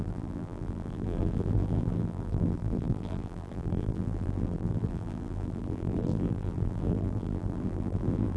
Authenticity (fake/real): fake